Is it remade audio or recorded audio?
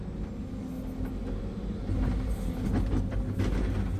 recorded